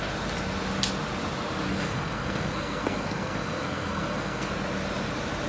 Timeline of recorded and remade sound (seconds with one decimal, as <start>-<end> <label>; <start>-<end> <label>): 0.0-1.7 recorded; 1.7-4.5 remade; 4.5-5.5 recorded